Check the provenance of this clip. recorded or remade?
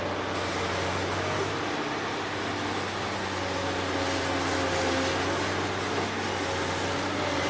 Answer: recorded